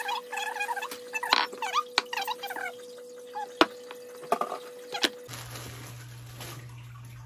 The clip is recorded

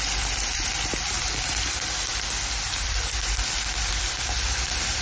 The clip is remade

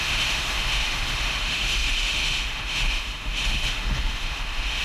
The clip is remade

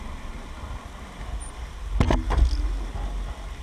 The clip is recorded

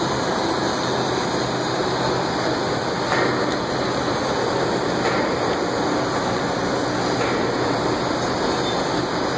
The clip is recorded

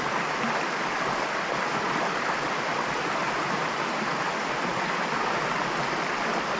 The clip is recorded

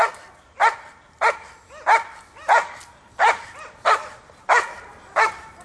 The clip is recorded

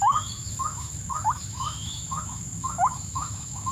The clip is remade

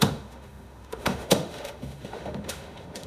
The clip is remade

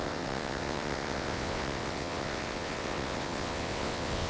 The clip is remade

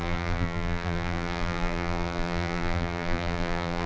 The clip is remade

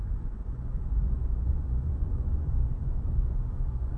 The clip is remade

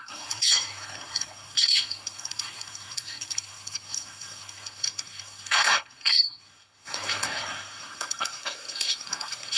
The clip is remade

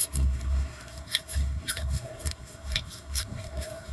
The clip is remade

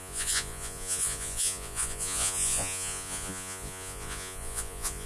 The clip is remade